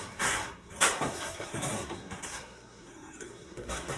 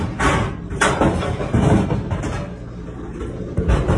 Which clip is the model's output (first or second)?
first